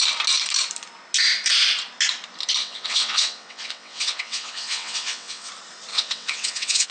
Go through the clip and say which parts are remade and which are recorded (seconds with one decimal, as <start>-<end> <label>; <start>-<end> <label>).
0.0-2.6 recorded; 2.6-5.5 remade; 5.5-5.9 recorded; 5.9-6.9 remade